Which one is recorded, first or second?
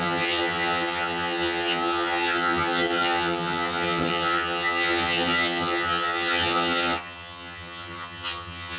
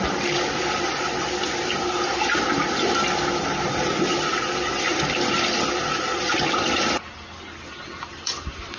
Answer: second